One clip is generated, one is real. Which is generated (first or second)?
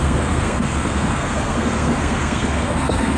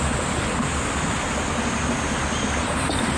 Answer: first